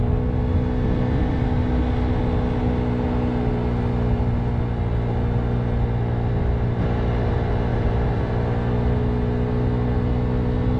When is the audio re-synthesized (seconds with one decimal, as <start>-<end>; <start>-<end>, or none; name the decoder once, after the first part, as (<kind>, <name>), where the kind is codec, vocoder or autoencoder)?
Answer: 7.7-8.3 (vocoder, BigVGAN v2)